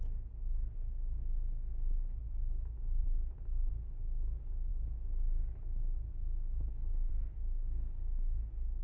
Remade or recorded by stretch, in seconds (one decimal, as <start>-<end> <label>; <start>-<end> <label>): 0.0-3.0 recorded; 3.0-3.7 remade; 3.7-8.8 recorded